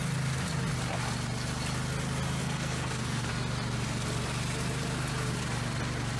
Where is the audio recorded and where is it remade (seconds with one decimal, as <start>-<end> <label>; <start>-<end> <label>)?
0.0-2.4 recorded; 2.4-3.3 remade; 3.3-6.2 recorded